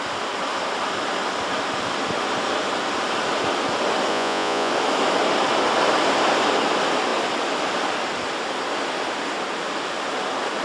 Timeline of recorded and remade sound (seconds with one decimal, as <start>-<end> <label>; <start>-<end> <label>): 0.0-4.1 recorded; 4.1-4.7 remade; 4.7-10.6 recorded